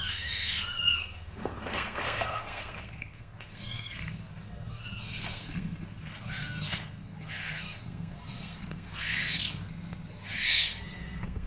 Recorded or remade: remade